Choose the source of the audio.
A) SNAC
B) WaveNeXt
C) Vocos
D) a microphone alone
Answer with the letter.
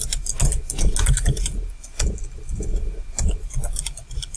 D